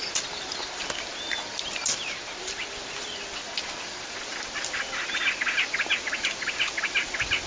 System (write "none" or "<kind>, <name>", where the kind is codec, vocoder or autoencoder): none